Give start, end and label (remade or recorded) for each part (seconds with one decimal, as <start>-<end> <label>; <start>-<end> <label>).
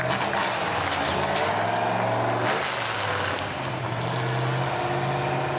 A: 0.0-5.6 recorded